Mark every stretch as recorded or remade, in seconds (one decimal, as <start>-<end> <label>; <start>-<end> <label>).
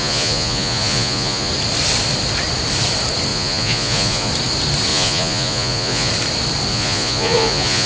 0.0-1.5 remade; 1.5-3.3 recorded; 3.3-4.3 remade; 4.3-4.9 recorded; 4.9-6.1 remade; 6.1-6.7 recorded; 6.7-7.9 remade